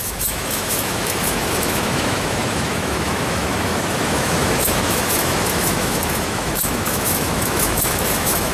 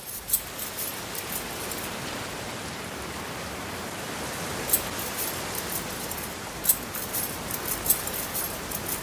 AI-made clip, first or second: first